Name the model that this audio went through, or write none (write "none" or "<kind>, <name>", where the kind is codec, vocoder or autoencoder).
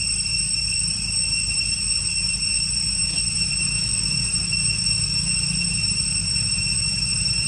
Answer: none